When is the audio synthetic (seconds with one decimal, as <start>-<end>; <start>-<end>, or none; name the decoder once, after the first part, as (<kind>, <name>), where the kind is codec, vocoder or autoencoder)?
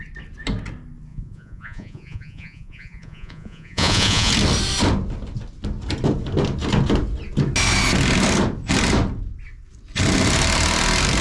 1.1-4.3 (vocoder, Vocos)